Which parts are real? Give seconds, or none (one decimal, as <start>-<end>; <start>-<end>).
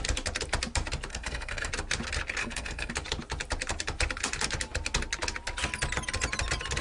0.0-1.1; 1.7-2.4; 2.9-6.8